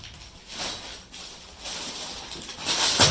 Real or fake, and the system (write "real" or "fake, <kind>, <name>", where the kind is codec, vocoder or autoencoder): real